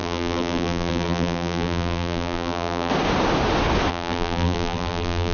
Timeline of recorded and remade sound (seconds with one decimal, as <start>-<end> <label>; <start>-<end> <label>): 0.0-2.9 remade; 2.9-3.9 recorded; 3.9-5.3 remade